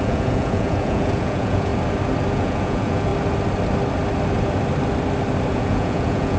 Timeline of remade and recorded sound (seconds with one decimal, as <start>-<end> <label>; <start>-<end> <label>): 0.0-1.7 remade; 1.7-2.3 recorded; 2.3-3.1 remade; 3.1-5.5 recorded; 5.5-6.4 remade

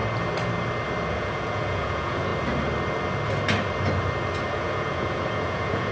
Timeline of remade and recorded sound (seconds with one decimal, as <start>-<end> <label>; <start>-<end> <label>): 0.0-1.1 recorded; 1.1-2.3 remade; 2.3-4.5 recorded; 4.5-5.9 remade

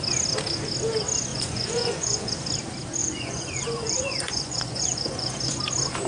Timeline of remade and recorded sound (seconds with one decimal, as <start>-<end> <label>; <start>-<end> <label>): 0.0-1.3 recorded; 1.3-2.3 remade; 2.3-3.0 recorded; 3.0-5.6 remade; 5.6-6.1 recorded